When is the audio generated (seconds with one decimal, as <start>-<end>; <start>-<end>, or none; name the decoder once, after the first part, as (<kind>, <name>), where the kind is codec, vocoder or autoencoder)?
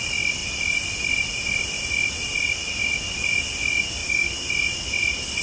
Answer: 0.4-3.4 (vocoder, BigVGAN v2); 4.0-4.5